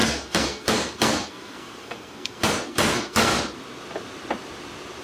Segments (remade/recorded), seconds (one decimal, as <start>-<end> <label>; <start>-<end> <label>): 0.0-3.3 remade; 3.3-5.0 recorded